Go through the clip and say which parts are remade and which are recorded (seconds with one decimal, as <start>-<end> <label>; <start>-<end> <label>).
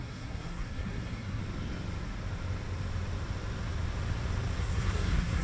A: 0.0-1.4 remade; 1.4-4.6 recorded; 4.6-5.4 remade